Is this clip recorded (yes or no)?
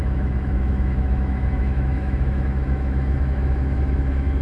no